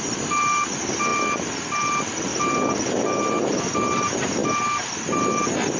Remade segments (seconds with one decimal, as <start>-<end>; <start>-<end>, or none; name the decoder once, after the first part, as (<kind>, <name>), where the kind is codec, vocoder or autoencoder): none